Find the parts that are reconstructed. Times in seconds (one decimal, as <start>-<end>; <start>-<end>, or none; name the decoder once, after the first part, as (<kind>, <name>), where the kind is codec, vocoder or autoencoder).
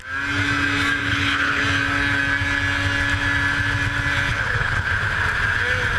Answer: 1.0-1.6 (codec, HILCodec); 4.3-4.9